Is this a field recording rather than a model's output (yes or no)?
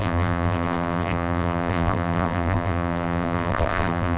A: no